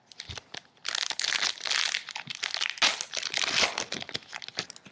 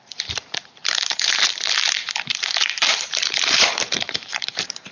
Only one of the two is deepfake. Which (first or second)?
second